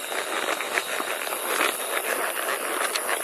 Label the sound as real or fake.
real